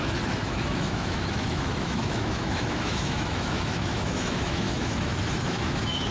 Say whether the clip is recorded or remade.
remade